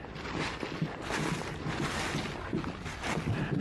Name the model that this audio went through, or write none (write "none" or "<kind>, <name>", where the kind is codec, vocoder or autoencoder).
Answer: none